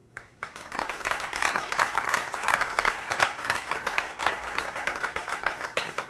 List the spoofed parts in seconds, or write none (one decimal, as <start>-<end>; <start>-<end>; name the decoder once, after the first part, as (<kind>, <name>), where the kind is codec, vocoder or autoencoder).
0.0-6.1 (codec, SNAC)